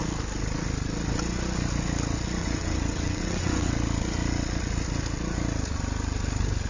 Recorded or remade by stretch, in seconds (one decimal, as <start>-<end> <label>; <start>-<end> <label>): 0.0-2.4 recorded; 2.4-3.7 remade; 3.7-6.7 recorded